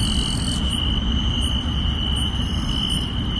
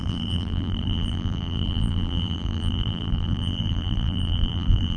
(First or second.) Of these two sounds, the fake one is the second